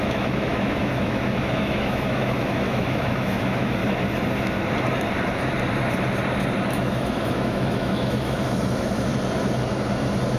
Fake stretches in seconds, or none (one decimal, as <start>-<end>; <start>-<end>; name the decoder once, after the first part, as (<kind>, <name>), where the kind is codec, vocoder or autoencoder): 0.0-3.8 (autoencoder, DAC-VAE); 6.7-9.1